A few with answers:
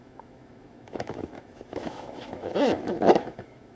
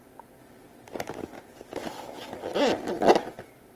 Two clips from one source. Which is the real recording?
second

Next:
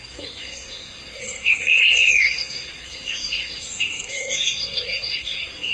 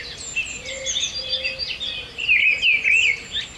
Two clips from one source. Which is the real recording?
second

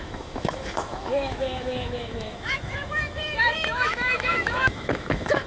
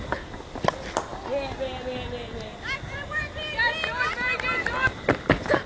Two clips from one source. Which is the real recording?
second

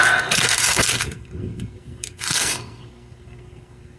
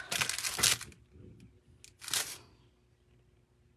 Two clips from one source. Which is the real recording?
second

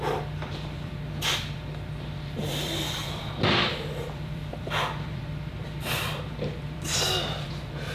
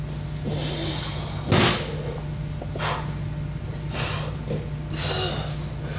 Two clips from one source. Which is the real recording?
second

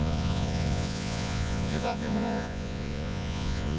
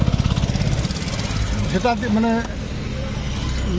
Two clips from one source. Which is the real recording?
second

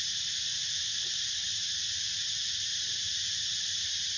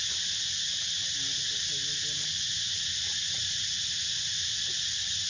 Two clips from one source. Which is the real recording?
second